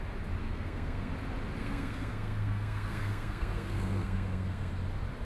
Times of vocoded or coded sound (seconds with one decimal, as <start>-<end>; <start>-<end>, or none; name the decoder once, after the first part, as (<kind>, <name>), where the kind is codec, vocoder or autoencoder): 0.4-1.1 (codec, SNAC); 1.6-4.7